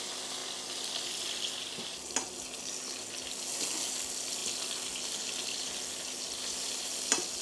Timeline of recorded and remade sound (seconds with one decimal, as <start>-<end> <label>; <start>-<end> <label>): 0.0-7.4 recorded